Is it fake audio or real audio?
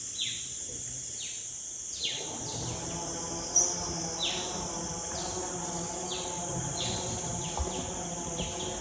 real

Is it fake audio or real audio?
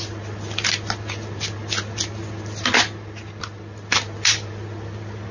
real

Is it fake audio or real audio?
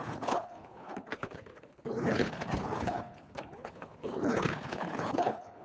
fake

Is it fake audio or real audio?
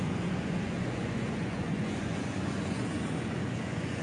fake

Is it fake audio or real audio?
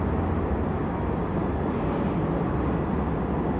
real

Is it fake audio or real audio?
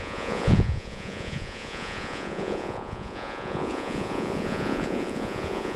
fake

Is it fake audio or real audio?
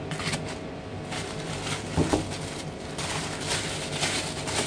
real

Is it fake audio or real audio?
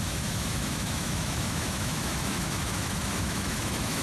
fake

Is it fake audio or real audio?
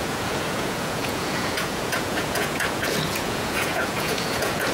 fake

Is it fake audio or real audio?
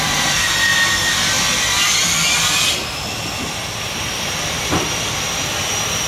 fake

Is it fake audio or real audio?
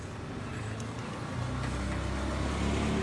real